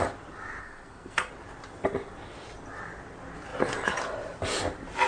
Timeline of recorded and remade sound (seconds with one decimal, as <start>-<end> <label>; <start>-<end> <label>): 0.0-0.6 recorded; 0.6-1.3 remade; 1.3-5.1 recorded